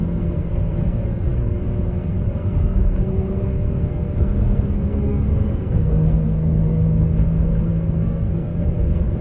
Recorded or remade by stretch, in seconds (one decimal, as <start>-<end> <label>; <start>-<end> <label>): 0.0-9.2 remade